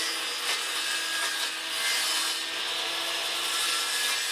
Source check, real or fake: real